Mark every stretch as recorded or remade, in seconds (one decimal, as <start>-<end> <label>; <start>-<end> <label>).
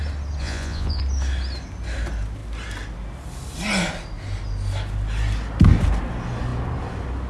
0.0-0.4 recorded; 0.4-1.0 remade; 1.0-7.3 recorded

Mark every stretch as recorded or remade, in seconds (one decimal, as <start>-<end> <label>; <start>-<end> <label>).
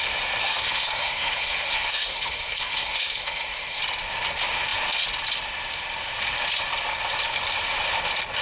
0.0-0.4 recorded; 0.4-3.8 remade; 3.8-8.4 recorded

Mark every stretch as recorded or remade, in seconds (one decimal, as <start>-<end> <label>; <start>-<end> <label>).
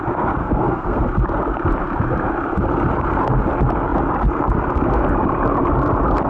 0.0-0.4 recorded; 0.4-1.0 remade; 1.0-6.3 recorded